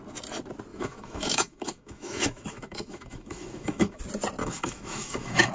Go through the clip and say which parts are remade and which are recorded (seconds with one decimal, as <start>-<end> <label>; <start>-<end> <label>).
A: 0.0-0.7 recorded; 0.7-4.0 remade; 4.0-4.4 recorded; 4.4-5.5 remade